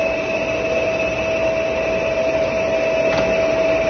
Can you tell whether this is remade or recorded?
recorded